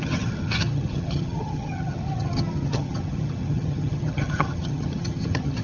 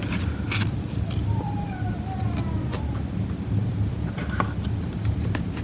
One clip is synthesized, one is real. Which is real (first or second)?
second